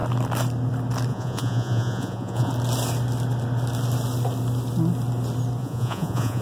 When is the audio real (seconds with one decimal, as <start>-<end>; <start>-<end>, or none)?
0.0-1.1; 2.5-5.6

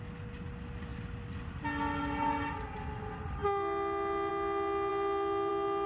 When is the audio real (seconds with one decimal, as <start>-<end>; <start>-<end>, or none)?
0.0-5.9

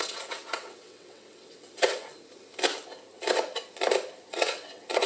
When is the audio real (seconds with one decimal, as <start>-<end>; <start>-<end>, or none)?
2.1-4.3

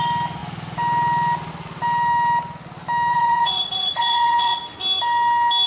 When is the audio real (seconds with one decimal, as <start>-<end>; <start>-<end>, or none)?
0.0-3.1; 4.6-5.7

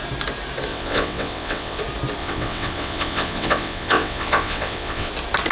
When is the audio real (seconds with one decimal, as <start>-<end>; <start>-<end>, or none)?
0.0-0.7; 1.8-2.2; 5.1-5.5

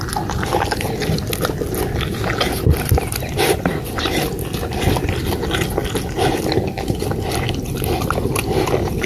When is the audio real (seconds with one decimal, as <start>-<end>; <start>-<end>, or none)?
0.0-9.1

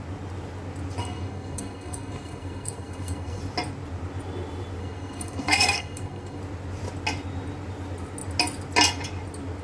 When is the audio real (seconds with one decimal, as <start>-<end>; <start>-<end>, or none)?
0.0-1.0; 3.4-4.8; 6.4-9.6

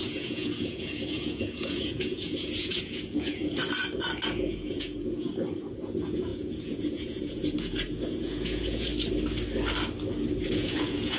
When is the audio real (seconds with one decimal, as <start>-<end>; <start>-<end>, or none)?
3.6-4.3; 5.3-5.8; 8.9-10.4